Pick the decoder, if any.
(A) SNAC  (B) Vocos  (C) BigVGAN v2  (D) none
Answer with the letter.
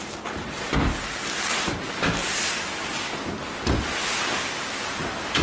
D